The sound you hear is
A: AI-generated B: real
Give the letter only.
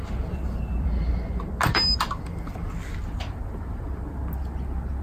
B